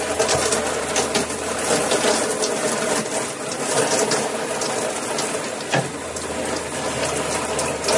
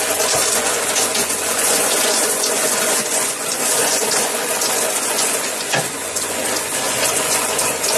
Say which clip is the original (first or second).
first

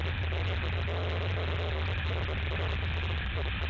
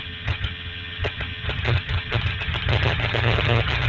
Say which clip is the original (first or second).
first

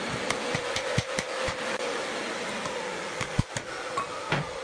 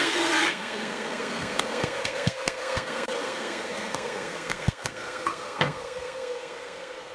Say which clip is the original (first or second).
first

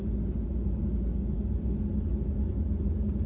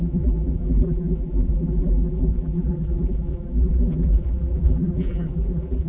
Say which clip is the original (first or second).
first